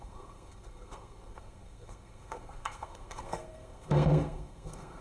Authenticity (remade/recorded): remade